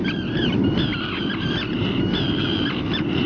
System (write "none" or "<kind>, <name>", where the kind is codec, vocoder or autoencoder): vocoder, BigVGAN v2